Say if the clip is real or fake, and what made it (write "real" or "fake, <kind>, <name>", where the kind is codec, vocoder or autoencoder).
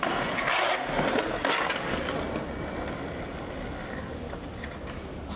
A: real